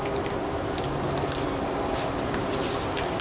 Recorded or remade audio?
recorded